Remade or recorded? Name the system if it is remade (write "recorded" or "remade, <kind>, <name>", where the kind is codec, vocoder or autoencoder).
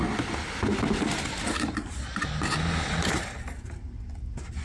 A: recorded